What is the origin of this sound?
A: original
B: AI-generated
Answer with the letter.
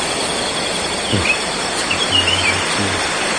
A